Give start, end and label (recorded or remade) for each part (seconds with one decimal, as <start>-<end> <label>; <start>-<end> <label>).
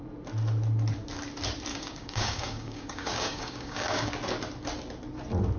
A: 0.0-1.7 recorded; 1.7-4.1 remade; 4.1-5.6 recorded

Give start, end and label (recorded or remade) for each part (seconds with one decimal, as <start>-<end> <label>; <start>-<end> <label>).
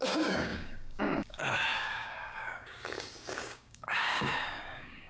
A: 0.0-5.1 remade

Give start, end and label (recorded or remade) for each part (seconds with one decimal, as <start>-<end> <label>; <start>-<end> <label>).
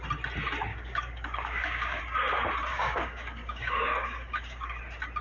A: 0.0-0.7 recorded; 0.7-2.0 remade; 2.0-2.7 recorded; 2.7-4.8 remade; 4.8-5.2 recorded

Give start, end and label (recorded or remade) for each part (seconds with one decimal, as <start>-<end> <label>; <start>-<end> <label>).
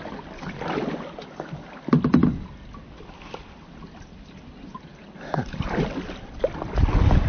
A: 0.0-7.3 recorded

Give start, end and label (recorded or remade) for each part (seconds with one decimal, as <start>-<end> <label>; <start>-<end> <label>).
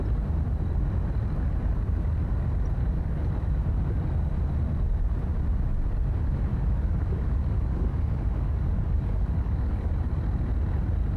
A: 0.0-2.8 recorded; 2.8-3.3 remade; 3.3-6.5 recorded; 6.5-9.9 remade; 9.9-11.2 recorded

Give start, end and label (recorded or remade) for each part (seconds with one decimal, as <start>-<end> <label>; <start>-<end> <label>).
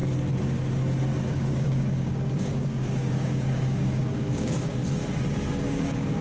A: 0.0-1.3 recorded; 1.3-4.8 remade; 4.8-5.5 recorded; 5.5-6.2 remade